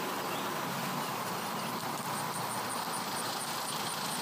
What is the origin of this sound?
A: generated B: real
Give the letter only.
B